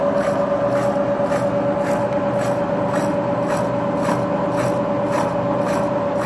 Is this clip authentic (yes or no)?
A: yes